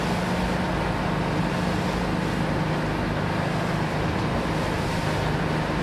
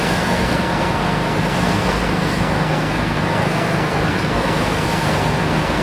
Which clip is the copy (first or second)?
second